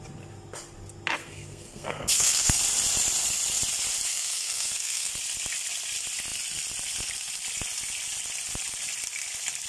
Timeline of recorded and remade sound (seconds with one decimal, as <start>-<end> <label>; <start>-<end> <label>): 0.0-1.2 recorded; 1.2-2.6 remade; 2.6-4.1 recorded; 4.1-5.1 remade; 5.1-9.7 recorded